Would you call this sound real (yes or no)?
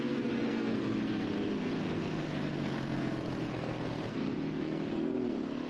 no